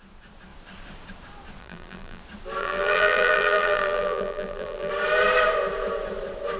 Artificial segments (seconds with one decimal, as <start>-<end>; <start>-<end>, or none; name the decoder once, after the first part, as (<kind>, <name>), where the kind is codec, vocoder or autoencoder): 1.6-2.2 (vocoder, BigVGAN v2); 2.6-4.9